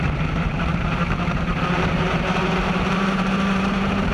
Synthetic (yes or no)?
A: yes